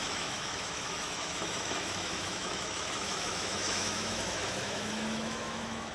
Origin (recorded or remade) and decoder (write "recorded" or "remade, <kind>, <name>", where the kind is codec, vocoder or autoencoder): remade, autoencoder, DAC-VAE